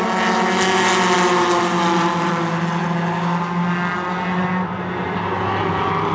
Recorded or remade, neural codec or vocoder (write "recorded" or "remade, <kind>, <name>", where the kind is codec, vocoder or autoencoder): recorded